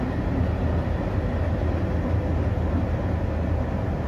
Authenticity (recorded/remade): recorded